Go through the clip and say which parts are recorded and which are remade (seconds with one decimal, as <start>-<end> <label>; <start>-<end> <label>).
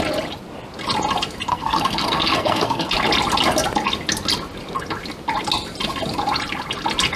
0.0-1.5 recorded; 1.5-2.9 remade; 2.9-7.2 recorded